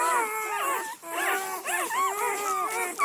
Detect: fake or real real